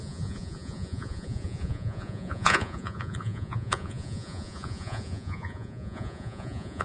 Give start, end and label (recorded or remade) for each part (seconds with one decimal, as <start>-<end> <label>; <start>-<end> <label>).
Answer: 0.0-6.8 remade